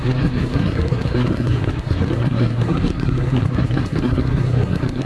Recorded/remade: remade